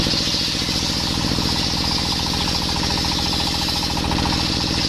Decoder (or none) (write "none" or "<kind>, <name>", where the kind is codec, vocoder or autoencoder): none